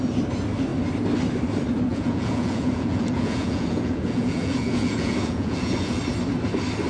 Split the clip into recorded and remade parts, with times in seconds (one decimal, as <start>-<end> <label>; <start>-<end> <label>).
0.0-1.9 recorded; 1.9-6.0 remade; 6.0-6.9 recorded